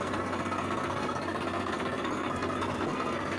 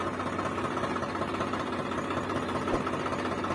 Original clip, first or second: second